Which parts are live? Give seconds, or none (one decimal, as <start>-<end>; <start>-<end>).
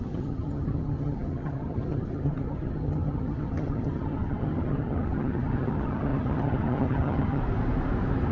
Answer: 7.4-8.3